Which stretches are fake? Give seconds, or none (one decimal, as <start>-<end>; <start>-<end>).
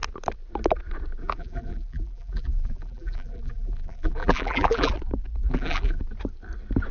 1.2-4.9; 5.5-6.0